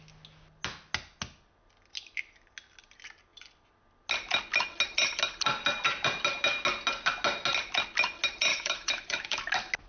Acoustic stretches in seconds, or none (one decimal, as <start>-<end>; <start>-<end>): 0.0-8.5; 9.5-9.9